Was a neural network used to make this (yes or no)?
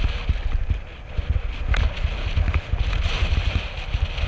no